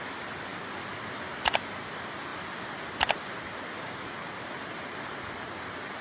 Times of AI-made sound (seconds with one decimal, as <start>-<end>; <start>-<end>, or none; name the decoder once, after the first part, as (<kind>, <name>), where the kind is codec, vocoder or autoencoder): none